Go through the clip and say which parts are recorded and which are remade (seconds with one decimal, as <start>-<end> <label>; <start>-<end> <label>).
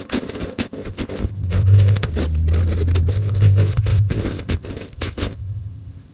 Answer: 0.0-2.1 remade; 2.1-3.1 recorded; 3.1-6.1 remade